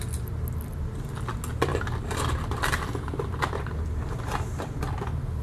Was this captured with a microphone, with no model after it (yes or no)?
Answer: yes